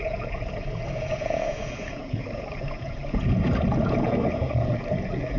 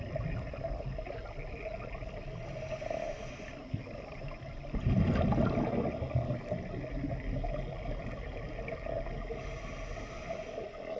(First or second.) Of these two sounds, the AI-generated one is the first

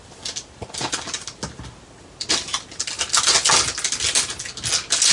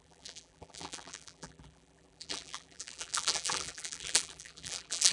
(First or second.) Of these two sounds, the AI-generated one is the second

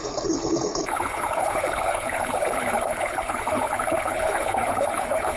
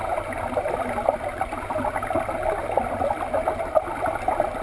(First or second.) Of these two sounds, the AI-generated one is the first